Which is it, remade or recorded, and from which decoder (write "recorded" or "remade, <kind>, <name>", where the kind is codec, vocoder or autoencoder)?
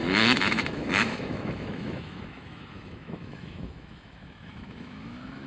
remade, autoencoder, DAC-VAE